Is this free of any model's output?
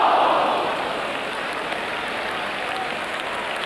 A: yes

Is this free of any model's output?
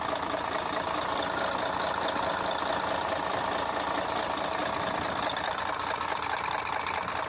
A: yes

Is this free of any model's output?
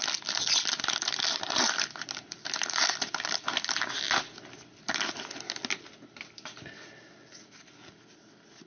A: yes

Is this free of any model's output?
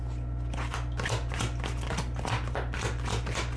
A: yes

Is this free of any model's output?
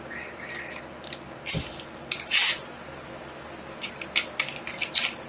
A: yes